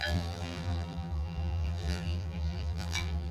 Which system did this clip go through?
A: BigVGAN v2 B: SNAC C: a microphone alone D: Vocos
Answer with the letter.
A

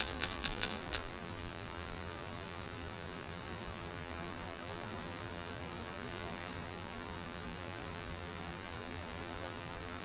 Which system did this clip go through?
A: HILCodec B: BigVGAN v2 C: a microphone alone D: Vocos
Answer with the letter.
B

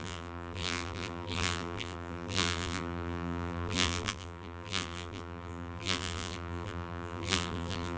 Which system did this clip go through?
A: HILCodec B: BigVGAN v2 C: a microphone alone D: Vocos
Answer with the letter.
B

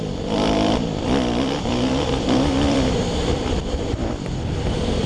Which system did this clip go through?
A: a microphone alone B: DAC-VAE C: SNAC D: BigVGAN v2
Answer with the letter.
D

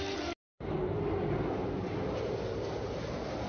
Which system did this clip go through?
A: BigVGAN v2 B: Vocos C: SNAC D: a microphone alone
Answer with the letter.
D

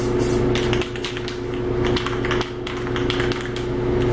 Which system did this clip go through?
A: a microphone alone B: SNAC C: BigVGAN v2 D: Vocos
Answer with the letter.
A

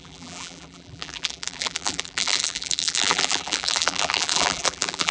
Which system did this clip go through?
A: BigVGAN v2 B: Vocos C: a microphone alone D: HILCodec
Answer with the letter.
A